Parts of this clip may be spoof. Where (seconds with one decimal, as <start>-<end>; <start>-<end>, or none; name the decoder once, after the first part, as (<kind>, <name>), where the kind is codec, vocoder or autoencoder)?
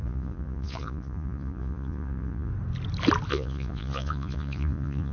0.0-2.5 (vocoder, Vocos); 3.3-5.1